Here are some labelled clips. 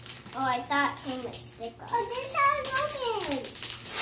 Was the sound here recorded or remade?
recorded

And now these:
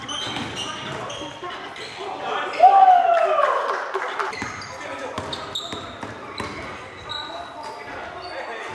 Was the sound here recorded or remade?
recorded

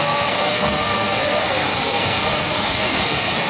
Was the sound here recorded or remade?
remade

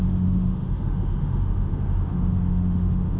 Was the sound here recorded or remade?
remade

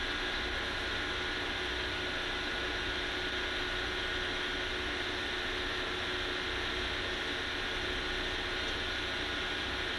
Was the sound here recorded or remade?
recorded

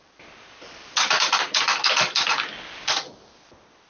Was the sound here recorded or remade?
recorded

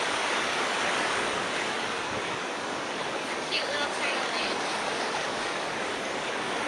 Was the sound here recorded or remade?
remade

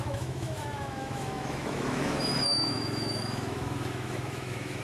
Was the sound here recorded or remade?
remade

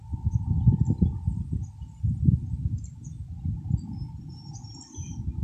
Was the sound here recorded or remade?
recorded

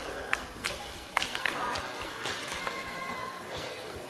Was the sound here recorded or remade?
remade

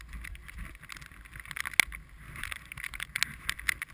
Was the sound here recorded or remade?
recorded